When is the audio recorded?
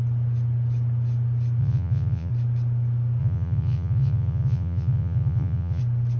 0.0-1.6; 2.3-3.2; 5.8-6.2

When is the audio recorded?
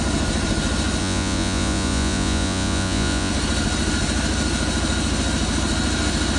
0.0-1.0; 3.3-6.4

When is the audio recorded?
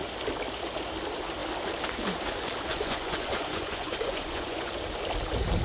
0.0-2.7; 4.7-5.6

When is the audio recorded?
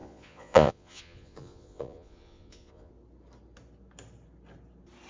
2.9-5.1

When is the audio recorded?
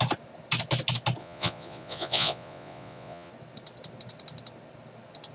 0.0-1.2; 3.3-5.3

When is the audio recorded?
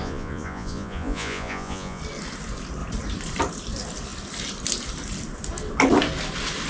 2.0-6.7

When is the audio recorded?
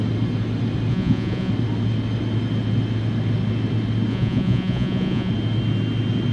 0.0-0.9; 1.5-4.1; 5.3-6.3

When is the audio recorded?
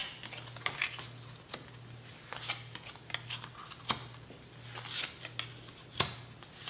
0.0-6.7